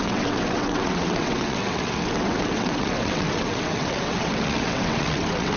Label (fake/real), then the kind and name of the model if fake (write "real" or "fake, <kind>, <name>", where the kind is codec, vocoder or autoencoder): fake, vocoder, WaveNeXt